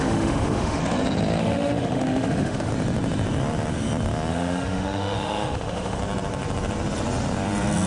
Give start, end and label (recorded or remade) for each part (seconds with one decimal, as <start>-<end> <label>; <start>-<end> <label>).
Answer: 0.0-0.8 remade; 0.8-1.4 recorded; 1.4-2.7 remade; 2.7-4.3 recorded; 4.3-6.0 remade; 6.0-7.9 recorded